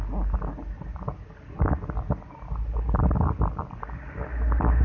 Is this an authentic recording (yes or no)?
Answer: yes